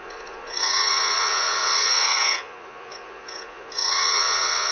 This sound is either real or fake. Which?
fake